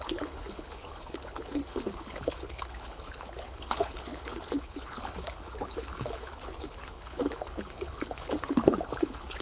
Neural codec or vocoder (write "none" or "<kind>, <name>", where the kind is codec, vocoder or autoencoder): codec, HILCodec